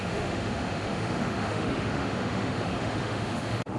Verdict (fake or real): fake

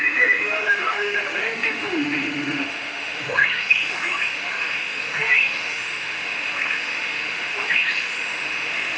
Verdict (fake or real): fake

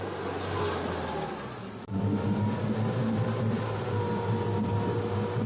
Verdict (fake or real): real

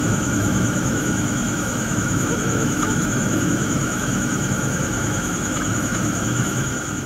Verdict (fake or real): fake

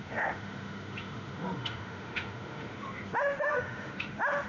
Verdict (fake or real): fake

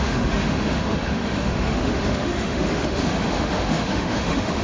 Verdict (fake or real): fake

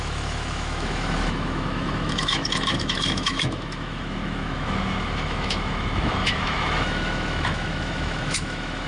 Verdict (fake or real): fake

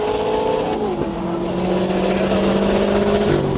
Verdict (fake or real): real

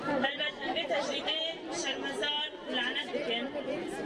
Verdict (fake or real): real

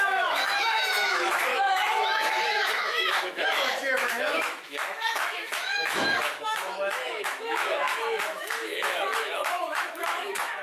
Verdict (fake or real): fake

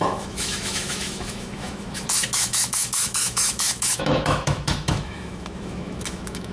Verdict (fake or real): fake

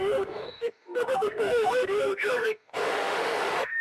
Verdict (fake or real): fake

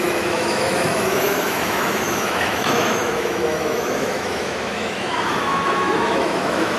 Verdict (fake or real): fake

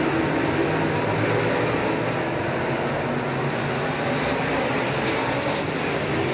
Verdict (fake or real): real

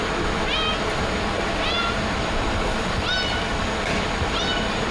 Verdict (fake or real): real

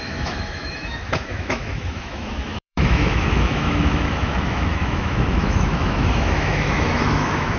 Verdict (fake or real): fake